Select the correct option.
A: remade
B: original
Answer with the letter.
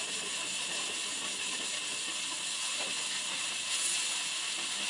B